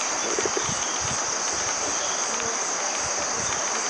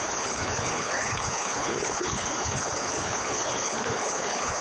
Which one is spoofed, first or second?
second